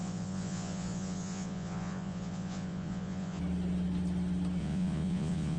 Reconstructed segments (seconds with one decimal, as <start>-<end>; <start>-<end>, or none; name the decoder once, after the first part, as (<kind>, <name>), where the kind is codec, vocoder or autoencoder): 0.0-3.4 (vocoder, Vocos); 4.6-5.6